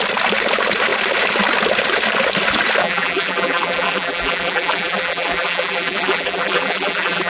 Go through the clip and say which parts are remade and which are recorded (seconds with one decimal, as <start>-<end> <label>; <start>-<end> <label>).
0.0-2.8 recorded; 2.8-7.3 remade